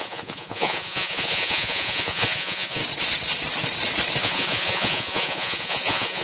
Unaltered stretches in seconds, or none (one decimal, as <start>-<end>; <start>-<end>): 2.8-4.2